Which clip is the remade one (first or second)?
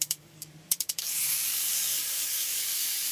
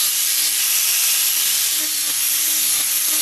first